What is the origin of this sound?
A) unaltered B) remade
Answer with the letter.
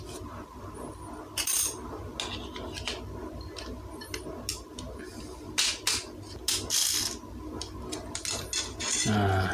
A